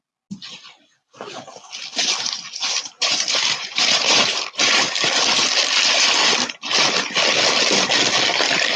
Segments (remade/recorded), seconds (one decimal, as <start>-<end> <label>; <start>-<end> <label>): 0.0-2.6 recorded; 2.6-4.9 remade; 4.9-8.8 recorded